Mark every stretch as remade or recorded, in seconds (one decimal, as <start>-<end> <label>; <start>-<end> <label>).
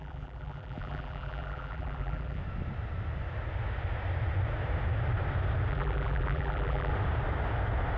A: 0.0-2.4 remade; 2.4-5.7 recorded; 5.7-6.9 remade; 6.9-8.0 recorded